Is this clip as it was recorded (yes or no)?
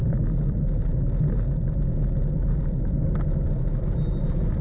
yes